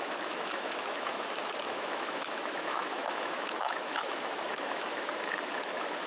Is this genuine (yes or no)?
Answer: no